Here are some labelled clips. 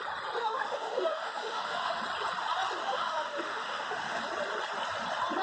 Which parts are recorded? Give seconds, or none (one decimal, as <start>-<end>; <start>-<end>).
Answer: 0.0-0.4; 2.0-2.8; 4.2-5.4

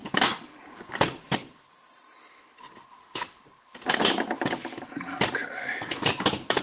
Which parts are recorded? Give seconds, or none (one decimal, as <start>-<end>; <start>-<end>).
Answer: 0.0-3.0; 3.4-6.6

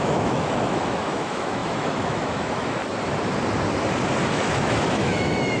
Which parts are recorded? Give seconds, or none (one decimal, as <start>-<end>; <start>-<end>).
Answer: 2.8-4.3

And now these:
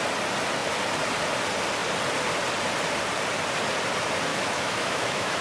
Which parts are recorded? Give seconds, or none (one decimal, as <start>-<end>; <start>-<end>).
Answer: 0.0-4.3

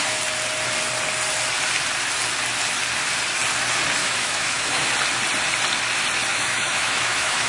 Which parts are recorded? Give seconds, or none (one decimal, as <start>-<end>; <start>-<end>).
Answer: 0.0-4.0; 4.9-6.3

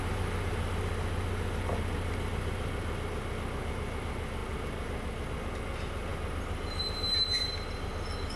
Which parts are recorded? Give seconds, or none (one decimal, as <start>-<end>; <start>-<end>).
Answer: 0.0-8.4

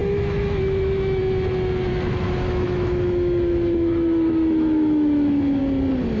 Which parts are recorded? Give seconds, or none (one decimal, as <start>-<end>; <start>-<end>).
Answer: 1.2-1.9; 5.6-6.2

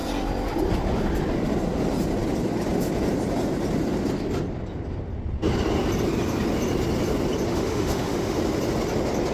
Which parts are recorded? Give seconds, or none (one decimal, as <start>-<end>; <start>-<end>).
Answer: 0.0-7.5; 8.4-9.3